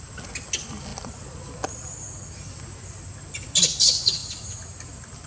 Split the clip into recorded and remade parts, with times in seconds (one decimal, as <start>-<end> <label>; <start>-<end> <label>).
0.0-5.3 recorded